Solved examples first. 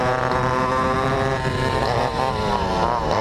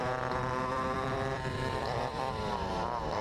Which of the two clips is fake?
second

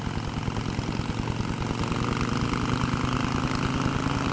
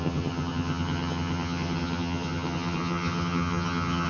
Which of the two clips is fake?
second